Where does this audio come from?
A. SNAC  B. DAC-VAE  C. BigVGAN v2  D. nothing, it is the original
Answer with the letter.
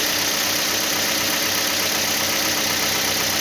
D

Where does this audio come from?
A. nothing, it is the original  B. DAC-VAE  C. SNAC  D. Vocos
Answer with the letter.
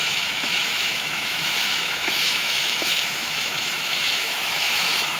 B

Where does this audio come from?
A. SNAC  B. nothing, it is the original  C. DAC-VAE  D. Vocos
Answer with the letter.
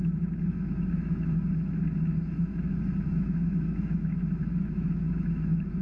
C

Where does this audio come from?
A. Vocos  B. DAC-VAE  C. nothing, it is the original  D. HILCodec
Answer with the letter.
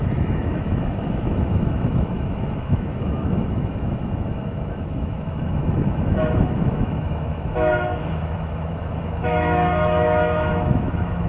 B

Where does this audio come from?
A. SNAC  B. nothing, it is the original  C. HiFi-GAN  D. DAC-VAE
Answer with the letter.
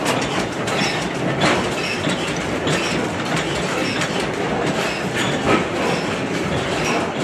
B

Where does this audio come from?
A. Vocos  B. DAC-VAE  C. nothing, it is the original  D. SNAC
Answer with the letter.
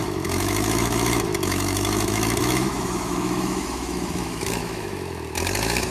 B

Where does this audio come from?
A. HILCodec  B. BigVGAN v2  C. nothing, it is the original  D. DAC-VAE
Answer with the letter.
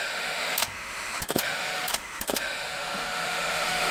D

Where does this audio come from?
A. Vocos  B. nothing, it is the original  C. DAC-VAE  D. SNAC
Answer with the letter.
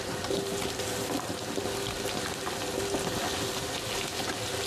B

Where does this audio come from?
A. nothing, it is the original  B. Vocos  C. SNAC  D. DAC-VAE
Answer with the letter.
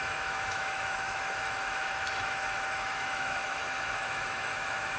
D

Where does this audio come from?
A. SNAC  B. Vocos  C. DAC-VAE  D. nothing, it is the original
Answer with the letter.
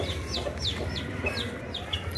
D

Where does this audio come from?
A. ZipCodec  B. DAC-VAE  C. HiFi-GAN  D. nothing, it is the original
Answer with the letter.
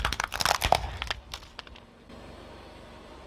D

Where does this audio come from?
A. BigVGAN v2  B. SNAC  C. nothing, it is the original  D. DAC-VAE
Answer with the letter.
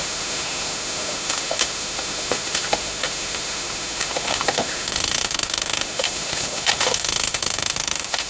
D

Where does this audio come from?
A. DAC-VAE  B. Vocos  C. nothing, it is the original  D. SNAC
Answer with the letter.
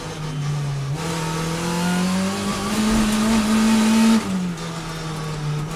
C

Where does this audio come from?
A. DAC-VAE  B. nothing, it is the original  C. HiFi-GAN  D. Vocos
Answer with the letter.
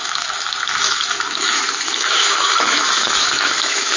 A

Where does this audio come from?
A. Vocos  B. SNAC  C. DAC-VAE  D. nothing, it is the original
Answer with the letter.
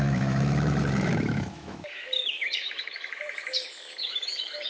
C